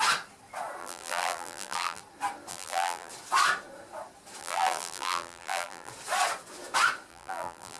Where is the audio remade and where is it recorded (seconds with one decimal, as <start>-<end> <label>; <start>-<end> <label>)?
0.0-0.8 recorded; 0.8-2.0 remade; 2.0-2.5 recorded; 2.5-3.1 remade; 3.1-4.4 recorded; 4.4-5.9 remade; 5.9-7.1 recorded; 7.1-7.8 remade